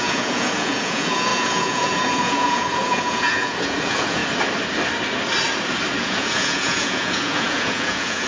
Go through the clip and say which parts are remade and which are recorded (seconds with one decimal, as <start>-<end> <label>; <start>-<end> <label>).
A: 0.0-4.2 remade; 4.2-6.0 recorded; 6.0-8.3 remade